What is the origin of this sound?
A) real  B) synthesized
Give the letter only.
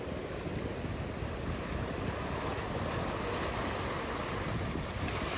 A